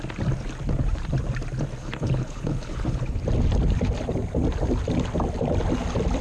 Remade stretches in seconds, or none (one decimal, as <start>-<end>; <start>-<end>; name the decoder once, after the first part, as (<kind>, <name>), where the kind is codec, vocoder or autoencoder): 1.8-3.2 (codec, HILCodec)